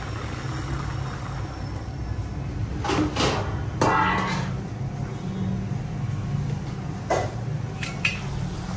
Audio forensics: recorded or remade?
recorded